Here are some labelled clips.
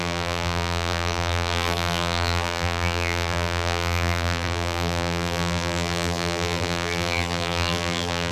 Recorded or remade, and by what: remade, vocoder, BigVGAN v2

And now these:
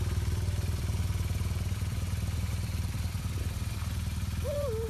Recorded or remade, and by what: remade, vocoder, BigVGAN v2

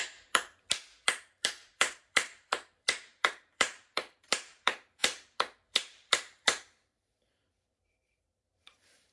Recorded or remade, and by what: remade, vocoder, BigVGAN v2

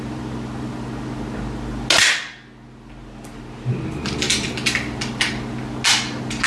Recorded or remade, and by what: recorded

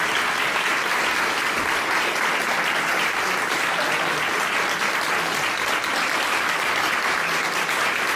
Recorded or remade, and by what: recorded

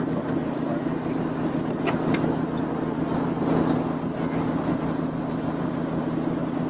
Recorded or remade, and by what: recorded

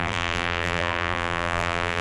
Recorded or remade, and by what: remade, vocoder, BigVGAN v2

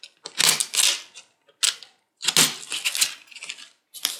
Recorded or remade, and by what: recorded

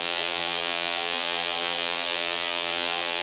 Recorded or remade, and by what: remade, vocoder, BigVGAN v2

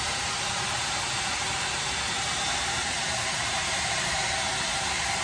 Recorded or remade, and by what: remade, vocoder, BigVGAN v2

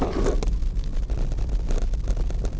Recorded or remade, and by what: recorded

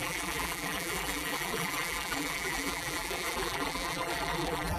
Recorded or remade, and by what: remade, vocoder, BigVGAN v2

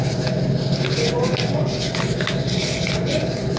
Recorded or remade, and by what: recorded